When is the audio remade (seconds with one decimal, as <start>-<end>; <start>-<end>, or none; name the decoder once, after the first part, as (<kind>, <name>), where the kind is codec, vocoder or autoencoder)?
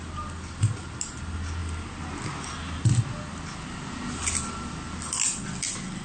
none